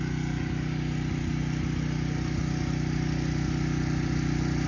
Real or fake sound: real